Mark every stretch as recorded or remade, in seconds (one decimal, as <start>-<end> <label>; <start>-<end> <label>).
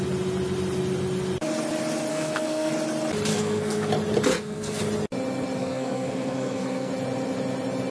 0.0-2.1 recorded; 2.1-2.7 remade; 2.7-3.3 recorded; 3.3-3.9 remade; 3.9-4.3 recorded; 4.3-4.8 remade; 4.8-5.6 recorded; 5.6-6.9 remade; 6.9-7.9 recorded